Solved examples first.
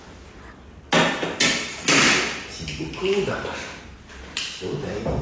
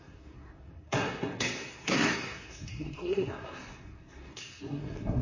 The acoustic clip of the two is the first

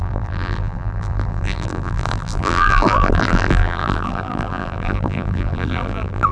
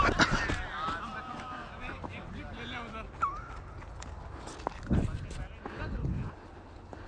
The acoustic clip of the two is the second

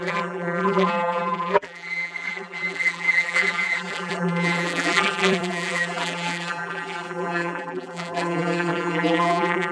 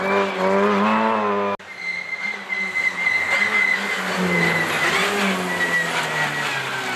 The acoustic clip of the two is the second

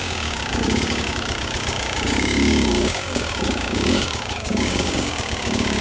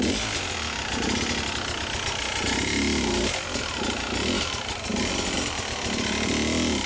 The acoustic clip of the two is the second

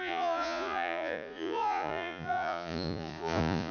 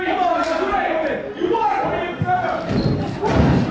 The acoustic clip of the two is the second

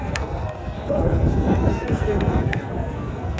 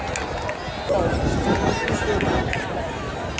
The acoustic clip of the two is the second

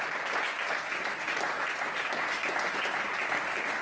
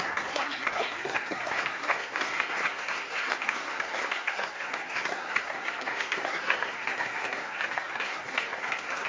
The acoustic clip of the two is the first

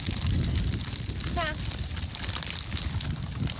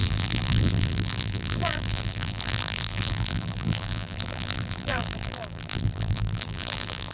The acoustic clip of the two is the first